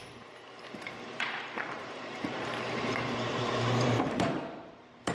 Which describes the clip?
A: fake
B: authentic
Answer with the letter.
A